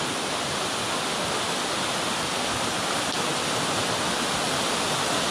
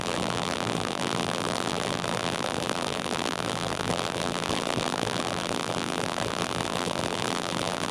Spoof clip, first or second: second